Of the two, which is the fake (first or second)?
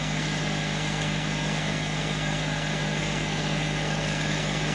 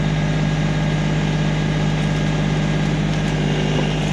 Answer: first